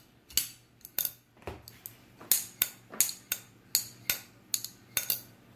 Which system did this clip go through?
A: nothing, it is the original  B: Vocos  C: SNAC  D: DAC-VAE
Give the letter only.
A